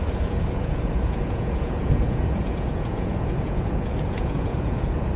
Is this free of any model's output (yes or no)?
no